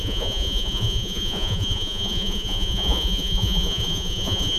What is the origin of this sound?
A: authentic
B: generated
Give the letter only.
B